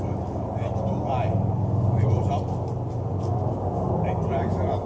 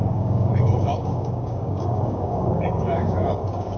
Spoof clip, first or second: second